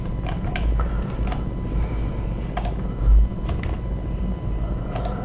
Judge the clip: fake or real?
real